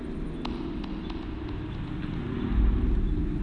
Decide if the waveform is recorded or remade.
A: recorded